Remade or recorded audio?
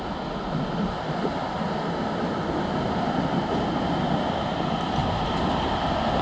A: recorded